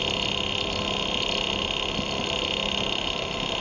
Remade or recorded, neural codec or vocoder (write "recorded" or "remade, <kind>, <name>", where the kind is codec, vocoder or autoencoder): recorded